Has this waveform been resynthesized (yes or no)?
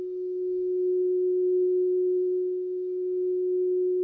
yes